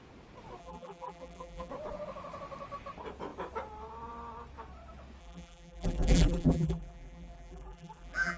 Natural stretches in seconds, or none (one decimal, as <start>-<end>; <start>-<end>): 0.0-0.6; 1.7-5.2